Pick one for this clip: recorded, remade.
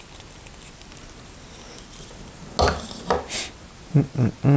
recorded